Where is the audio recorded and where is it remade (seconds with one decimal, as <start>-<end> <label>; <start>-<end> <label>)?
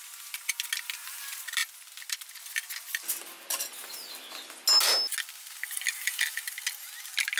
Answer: 0.0-7.4 recorded